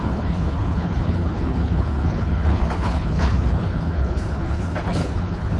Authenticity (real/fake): fake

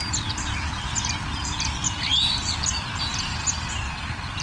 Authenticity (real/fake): real